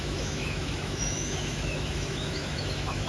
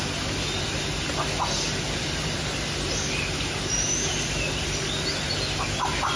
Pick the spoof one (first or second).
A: first